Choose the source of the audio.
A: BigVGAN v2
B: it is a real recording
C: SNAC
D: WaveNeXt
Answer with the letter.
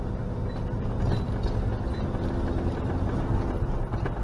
B